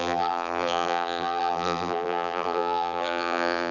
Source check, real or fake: fake